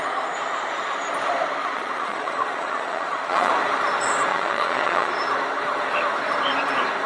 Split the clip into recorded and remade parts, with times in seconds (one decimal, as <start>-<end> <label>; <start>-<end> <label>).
0.0-1.6 recorded; 1.6-3.5 remade; 3.5-4.3 recorded; 4.3-5.1 remade; 5.1-7.1 recorded